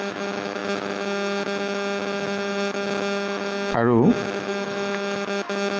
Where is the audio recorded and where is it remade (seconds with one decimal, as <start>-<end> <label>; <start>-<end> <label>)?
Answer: 0.0-5.8 remade